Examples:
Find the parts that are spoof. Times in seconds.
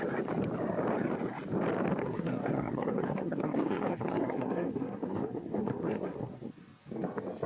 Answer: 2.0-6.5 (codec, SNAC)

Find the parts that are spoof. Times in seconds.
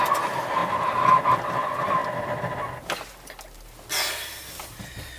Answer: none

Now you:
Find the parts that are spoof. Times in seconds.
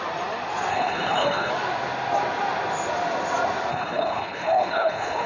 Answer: 0.7-1.5 (codec, HILCodec); 3.7-5.3